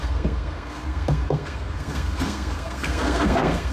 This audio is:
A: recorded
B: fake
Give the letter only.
B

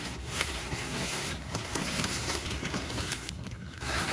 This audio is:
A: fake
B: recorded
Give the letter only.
A